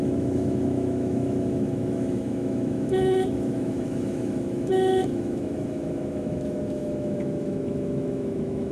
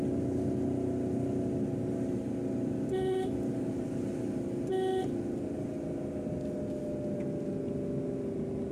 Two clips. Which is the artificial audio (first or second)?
first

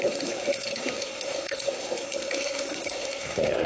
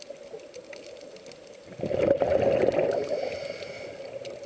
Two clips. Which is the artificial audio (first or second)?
first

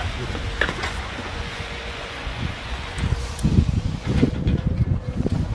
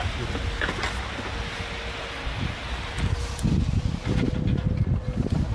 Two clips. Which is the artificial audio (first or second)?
first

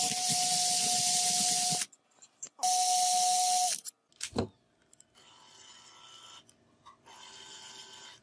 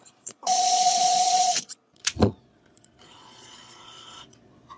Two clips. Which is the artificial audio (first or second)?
second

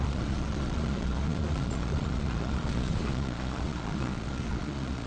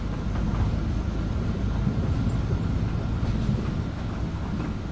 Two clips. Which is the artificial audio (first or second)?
first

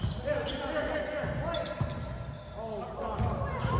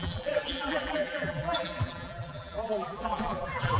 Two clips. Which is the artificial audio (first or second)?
second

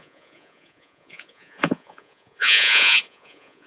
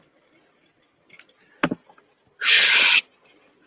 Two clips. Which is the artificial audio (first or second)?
first